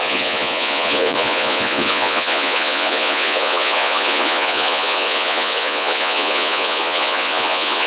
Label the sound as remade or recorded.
remade